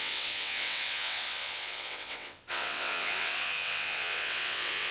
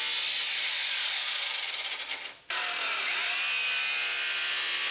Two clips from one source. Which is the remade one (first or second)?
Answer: first